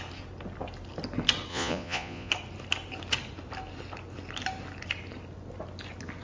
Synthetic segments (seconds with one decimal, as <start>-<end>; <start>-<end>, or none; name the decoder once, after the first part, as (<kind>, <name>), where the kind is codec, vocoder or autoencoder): 1.5-2.3 (vocoder, Vocos)